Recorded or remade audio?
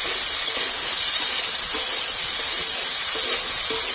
recorded